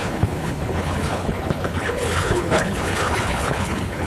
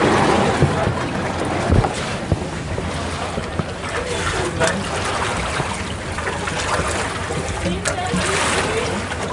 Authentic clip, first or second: second